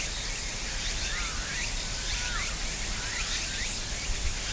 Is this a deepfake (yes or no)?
no